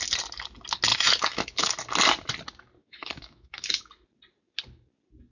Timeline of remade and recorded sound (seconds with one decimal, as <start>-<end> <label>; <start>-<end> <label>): 0.0-0.9 recorded; 0.9-1.8 remade; 1.8-2.8 recorded; 2.8-3.9 remade; 3.9-5.3 recorded